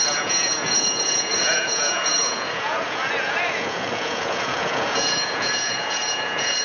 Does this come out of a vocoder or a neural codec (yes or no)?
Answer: yes